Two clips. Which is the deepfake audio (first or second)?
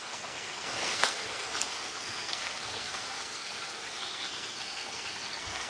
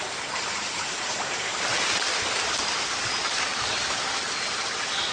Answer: first